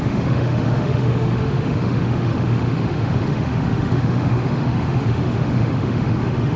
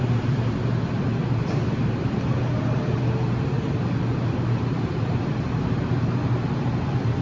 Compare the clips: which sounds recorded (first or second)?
second